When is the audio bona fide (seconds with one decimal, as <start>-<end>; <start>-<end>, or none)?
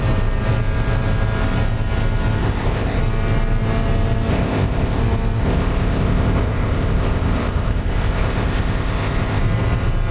0.0-2.4; 3.0-4.3; 5.0-5.4; 9.4-10.1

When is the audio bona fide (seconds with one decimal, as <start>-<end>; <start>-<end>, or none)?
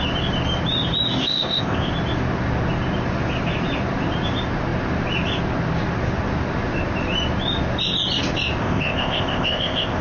0.0-1.2; 1.9-8.6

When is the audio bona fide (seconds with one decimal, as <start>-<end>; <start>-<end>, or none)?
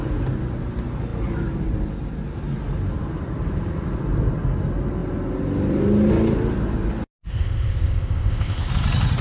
0.0-7.3; 8.7-9.2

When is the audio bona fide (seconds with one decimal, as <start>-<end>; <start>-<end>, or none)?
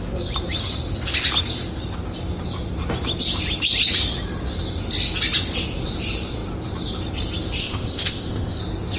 0.0-7.6; 8.6-9.0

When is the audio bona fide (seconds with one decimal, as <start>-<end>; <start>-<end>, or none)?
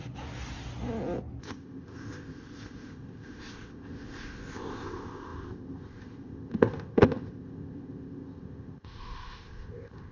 0.0-1.4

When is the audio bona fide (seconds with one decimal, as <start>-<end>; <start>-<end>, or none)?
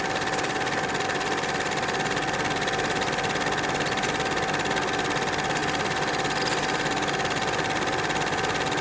0.0-8.8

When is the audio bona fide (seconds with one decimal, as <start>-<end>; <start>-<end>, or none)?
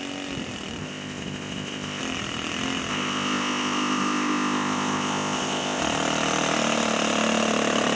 0.0-0.8; 2.0-2.9; 5.8-7.9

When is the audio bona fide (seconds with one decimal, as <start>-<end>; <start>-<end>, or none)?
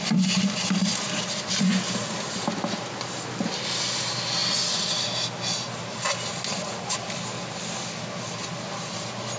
0.0-9.4